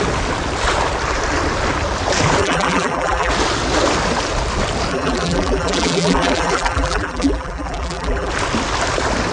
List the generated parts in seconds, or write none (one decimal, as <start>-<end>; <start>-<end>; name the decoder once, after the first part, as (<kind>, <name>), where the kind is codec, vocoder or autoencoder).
2.4-3.3 (vocoder, BigVGAN v2); 4.9-8.3